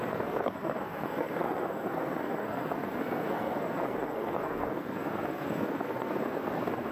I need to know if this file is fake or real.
fake